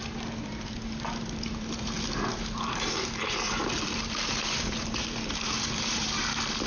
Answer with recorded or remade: remade